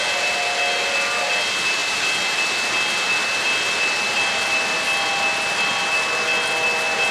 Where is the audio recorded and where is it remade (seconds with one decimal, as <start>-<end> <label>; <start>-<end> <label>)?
0.0-7.1 recorded